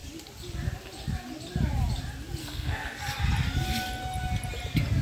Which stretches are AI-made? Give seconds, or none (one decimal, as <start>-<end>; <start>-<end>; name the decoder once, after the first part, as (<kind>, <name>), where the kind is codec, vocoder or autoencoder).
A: 2.4-3.2 (codec, SNAC)